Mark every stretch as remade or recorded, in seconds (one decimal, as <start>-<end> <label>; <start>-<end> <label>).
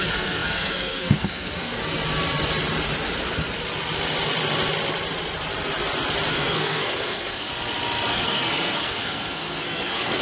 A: 0.0-1.8 remade; 1.8-6.3 recorded; 6.3-7.5 remade; 7.5-8.1 recorded; 8.1-10.2 remade